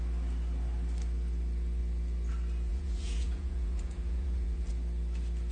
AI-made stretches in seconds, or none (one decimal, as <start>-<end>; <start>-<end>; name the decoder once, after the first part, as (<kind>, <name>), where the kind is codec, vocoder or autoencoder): 2.7-4.7 (vocoder, Vocos)